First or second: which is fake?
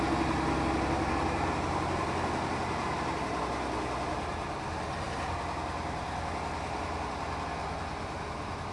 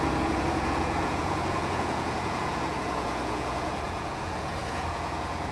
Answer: second